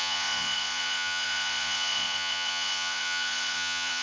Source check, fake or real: fake